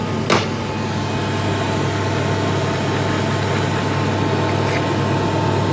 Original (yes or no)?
yes